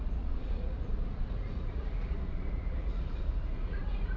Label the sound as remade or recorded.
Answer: remade